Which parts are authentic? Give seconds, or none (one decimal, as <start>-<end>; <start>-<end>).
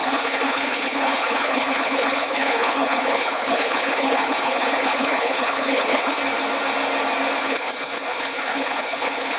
6.2-7.4